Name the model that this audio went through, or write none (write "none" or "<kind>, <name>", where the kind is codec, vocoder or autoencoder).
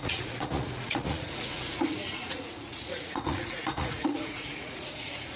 vocoder, Vocos